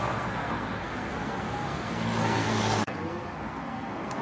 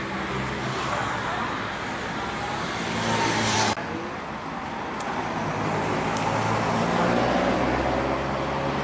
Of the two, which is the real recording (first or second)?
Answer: second